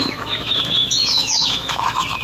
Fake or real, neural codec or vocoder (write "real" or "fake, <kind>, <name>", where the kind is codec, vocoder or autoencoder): fake, autoencoder, DAC-VAE